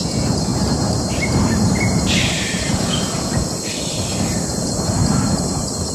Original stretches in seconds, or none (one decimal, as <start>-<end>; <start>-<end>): 0.0-0.5; 2.7-5.0